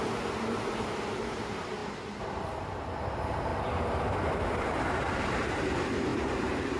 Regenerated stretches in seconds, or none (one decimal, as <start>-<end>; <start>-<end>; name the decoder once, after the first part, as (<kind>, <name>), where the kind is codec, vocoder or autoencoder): 0.0-3.5 (vocoder, BigVGAN v2); 4.6-6.8